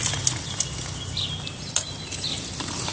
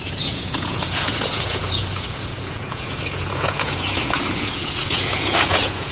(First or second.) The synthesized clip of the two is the second